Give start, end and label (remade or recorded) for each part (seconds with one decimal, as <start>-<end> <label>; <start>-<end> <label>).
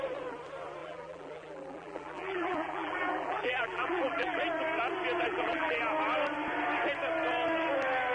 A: 0.0-0.8 recorded; 0.8-4.4 remade; 4.4-5.3 recorded; 5.3-5.8 remade; 5.8-8.1 recorded